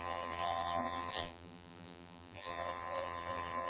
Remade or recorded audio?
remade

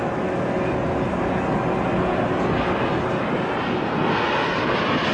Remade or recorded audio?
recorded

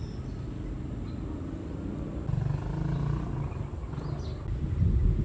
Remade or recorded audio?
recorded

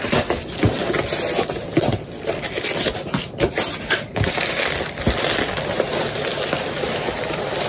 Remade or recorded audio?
recorded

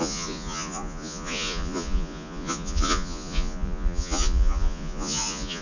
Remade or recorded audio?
remade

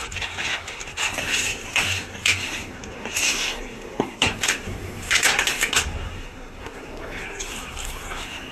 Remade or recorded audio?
remade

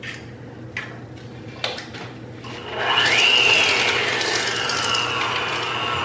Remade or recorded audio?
recorded